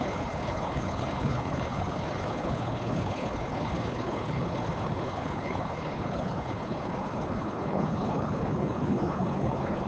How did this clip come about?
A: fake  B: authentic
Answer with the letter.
A